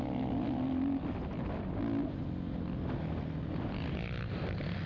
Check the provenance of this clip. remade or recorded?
recorded